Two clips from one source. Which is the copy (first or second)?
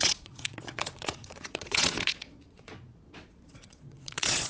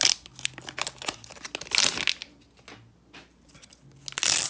first